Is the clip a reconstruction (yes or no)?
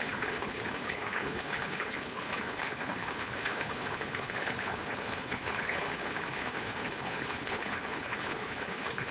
yes